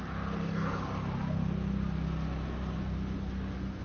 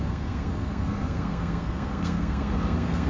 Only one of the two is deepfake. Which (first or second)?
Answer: second